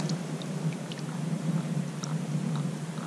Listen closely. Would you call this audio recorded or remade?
recorded